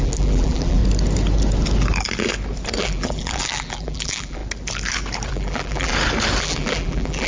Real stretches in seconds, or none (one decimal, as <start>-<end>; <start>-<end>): 0.8-2.8; 4.4-5.3; 5.9-6.4